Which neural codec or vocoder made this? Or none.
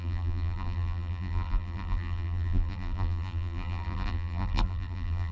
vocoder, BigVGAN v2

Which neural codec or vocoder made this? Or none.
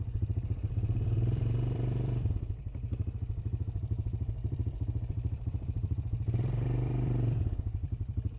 vocoder, BigVGAN v2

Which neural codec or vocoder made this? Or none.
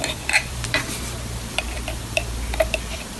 vocoder, BigVGAN v2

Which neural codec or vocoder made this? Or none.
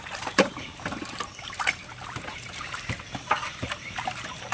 vocoder, BigVGAN v2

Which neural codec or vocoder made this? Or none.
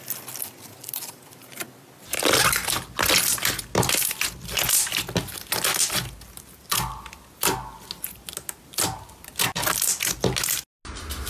none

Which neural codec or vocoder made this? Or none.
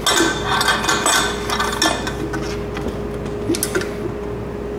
none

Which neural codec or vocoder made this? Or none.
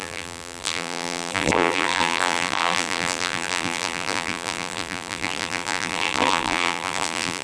vocoder, BigVGAN v2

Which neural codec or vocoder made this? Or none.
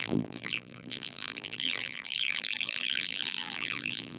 vocoder, BigVGAN v2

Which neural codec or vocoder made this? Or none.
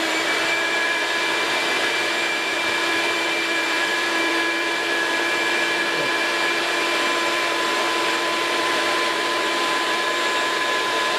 vocoder, BigVGAN v2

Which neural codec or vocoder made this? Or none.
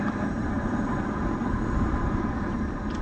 vocoder, BigVGAN v2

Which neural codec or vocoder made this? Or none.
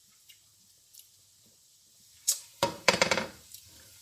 vocoder, BigVGAN v2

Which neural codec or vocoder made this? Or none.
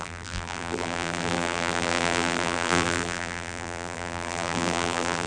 vocoder, BigVGAN v2